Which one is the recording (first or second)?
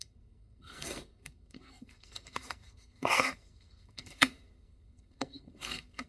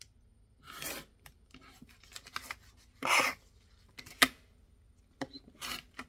second